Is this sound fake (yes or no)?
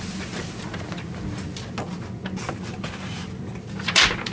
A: no